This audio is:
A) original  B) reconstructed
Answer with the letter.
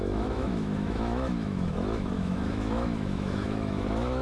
B